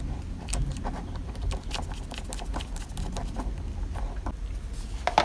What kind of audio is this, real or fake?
real